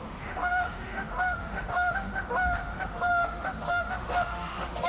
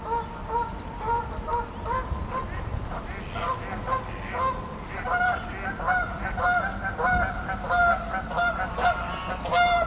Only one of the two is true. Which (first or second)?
second